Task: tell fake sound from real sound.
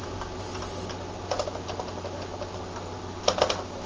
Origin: real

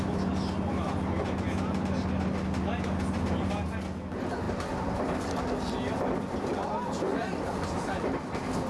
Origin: real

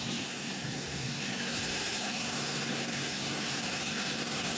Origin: fake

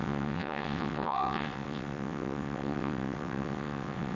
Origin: fake